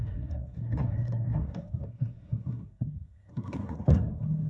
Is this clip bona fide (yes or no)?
no